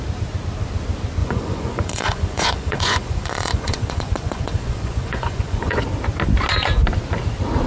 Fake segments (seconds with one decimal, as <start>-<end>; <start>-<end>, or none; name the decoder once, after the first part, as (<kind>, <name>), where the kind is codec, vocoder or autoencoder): 1.2-5.8 (vocoder, Vocos)